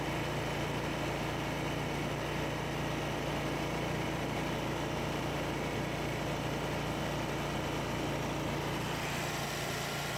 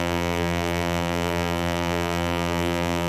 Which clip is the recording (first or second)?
first